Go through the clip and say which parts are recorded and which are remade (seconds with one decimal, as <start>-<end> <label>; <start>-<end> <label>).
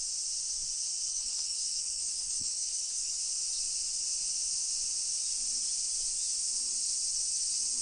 0.0-1.1 recorded; 1.1-3.2 remade; 3.2-7.8 recorded